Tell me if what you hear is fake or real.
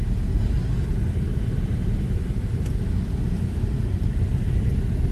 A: real